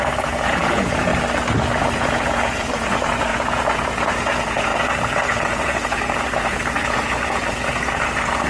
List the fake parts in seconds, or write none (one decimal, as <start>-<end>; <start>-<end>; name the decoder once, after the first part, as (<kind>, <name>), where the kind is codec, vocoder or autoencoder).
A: 0.0-1.1 (vocoder, Vocos); 1.8-8.5

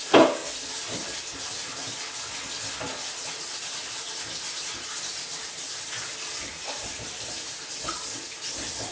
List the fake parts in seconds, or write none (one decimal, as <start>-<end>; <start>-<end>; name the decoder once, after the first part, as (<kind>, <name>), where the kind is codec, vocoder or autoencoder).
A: 6.6-7.5 (vocoder, BigVGAN v2)

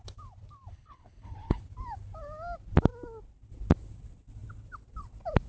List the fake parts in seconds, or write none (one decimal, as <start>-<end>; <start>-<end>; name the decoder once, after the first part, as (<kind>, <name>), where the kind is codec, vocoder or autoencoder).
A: 0.7-1.6 (codec, HILCodec)

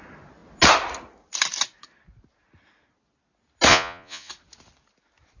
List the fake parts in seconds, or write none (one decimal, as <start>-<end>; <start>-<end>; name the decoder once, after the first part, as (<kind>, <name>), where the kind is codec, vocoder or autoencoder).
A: 3.7-4.3 (vocoder, Vocos)